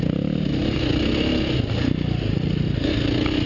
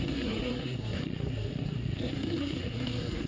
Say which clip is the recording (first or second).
first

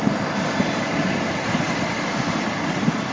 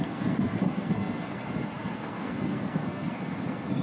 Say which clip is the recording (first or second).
first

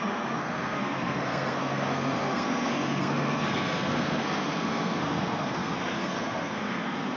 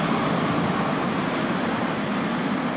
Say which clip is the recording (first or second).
second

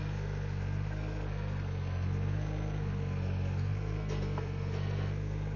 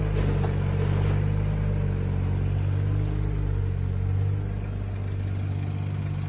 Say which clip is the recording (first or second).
second